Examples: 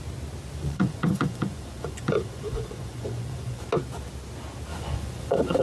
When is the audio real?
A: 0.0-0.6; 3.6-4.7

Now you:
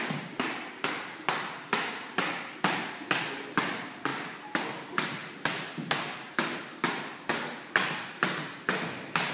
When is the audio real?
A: 0.0-9.3

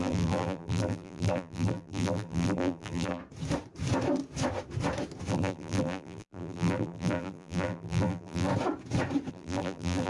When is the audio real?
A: 3.2-5.3; 8.5-9.3

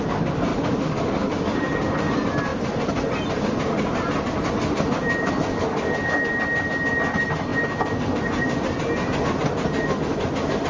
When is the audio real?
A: 0.0-0.5; 2.1-5.5; 6.4-10.7

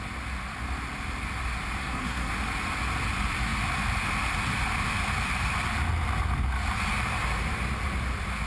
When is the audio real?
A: 0.0-1.8; 2.3-8.5